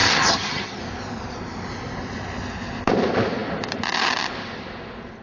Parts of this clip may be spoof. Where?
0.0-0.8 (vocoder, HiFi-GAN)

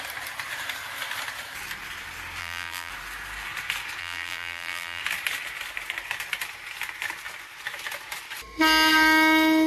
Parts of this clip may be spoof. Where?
2.4-2.9 (vocoder, BigVGAN v2); 4.0-5.0

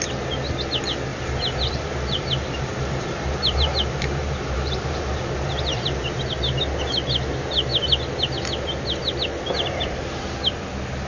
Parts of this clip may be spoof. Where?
1.1-6.2 (vocoder, BigVGAN v2)

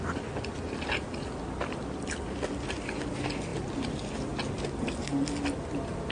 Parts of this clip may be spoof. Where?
none

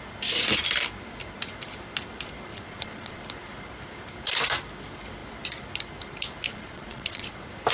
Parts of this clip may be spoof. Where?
2.5-3.2 (vocoder, Vocos); 6.5-7.3